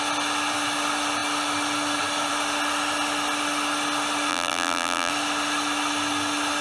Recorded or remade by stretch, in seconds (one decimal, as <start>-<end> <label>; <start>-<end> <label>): 0.0-4.3 recorded; 4.3-5.1 remade; 5.1-6.6 recorded